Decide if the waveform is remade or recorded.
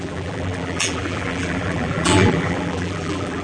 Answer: remade